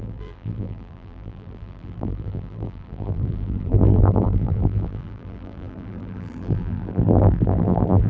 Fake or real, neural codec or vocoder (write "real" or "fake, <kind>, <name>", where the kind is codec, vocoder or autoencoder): fake, vocoder, BigVGAN v2